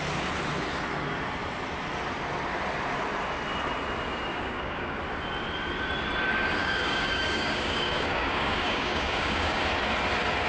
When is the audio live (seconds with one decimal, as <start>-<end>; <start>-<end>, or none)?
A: 0.0-4.3; 5.0-6.6; 9.6-10.5